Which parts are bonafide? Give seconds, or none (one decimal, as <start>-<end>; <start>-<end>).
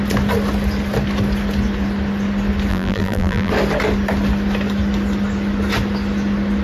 0.0-2.7; 3.5-6.6